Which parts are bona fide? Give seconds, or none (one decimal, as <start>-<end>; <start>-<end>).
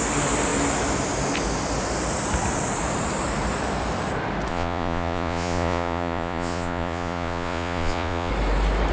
0.0-4.5; 8.3-8.9